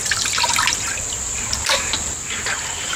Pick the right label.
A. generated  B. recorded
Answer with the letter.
B